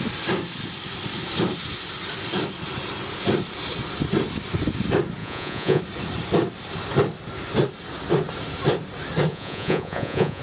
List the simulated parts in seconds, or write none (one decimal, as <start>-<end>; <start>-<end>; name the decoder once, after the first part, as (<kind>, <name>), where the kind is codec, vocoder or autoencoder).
5.2-5.8 (vocoder, Vocos); 9.3-10.4